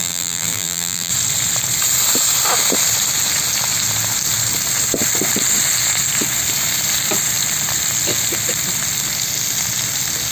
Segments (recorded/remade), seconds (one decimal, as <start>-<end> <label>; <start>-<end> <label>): 0.0-1.1 remade; 1.1-10.3 recorded